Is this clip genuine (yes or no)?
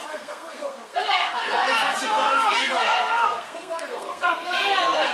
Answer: no